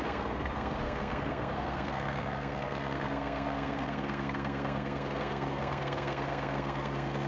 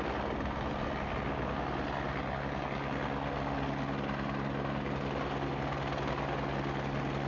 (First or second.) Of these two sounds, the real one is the second